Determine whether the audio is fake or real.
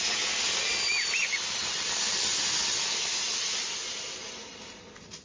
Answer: real